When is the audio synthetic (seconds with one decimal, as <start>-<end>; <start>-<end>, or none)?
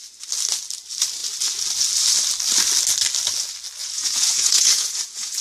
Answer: 3.8-5.4